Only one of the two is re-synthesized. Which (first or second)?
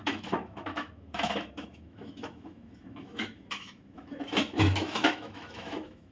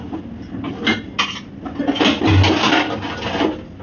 first